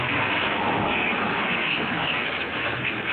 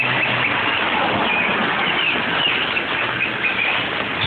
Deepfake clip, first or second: first